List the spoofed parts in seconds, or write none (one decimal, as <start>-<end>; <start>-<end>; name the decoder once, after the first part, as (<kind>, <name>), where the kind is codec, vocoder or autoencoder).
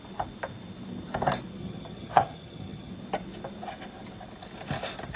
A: 1.6-2.9 (vocoder, HiFi-GAN)